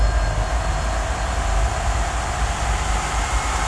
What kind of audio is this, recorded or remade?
recorded